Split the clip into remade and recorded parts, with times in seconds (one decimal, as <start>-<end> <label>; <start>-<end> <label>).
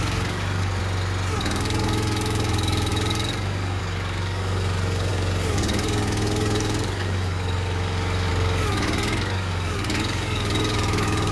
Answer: 0.0-0.8 remade; 0.8-1.4 recorded; 1.4-11.3 remade